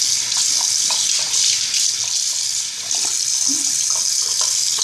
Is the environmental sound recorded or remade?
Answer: recorded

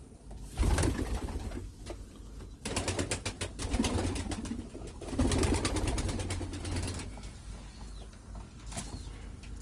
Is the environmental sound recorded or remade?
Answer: recorded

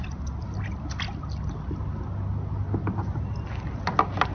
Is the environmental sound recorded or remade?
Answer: recorded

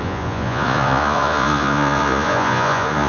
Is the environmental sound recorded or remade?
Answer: remade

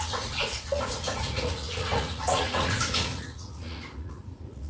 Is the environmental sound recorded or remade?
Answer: remade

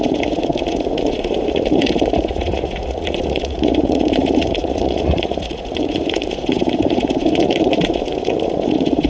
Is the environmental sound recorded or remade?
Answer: remade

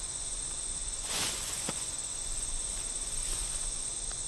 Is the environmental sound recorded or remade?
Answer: remade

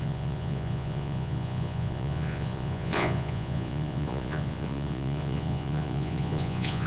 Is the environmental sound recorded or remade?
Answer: remade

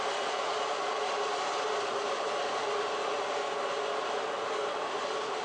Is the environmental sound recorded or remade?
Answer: recorded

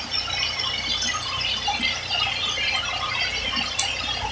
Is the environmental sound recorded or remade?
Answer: recorded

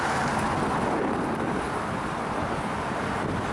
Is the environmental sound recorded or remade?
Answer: recorded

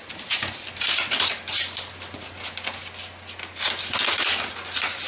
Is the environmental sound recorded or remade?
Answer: recorded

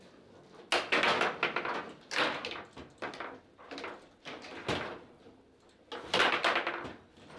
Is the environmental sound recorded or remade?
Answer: recorded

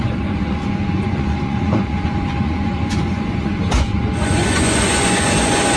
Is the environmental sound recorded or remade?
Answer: remade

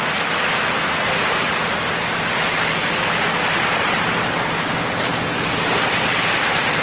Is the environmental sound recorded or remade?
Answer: recorded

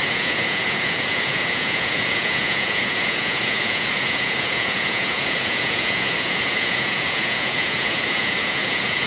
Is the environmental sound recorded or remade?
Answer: remade